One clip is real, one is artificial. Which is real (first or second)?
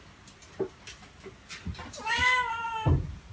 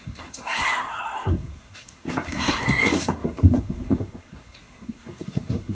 first